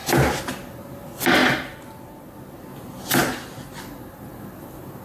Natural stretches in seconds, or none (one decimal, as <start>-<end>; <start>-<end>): 0.0-5.0